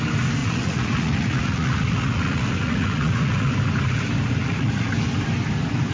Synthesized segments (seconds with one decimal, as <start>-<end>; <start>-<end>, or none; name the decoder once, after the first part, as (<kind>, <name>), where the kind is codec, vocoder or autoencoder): 0.4-3.5 (vocoder, Vocos); 4.4-4.9